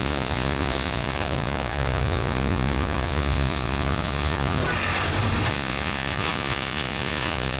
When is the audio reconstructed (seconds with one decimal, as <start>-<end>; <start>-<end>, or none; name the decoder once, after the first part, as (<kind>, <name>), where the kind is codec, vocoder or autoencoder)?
0.0-4.6 (vocoder, Vocos); 5.5-7.6